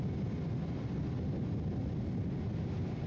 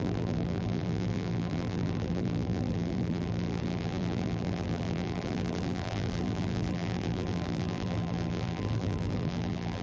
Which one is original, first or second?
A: first